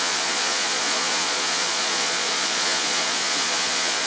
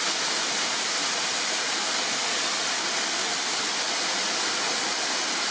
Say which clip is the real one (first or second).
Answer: second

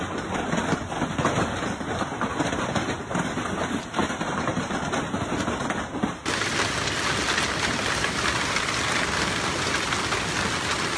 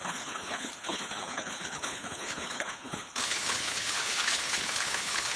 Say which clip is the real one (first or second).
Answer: first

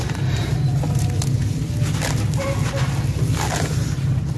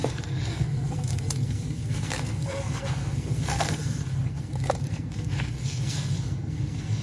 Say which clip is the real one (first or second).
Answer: first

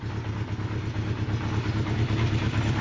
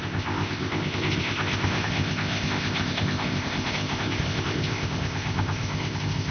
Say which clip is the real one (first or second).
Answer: first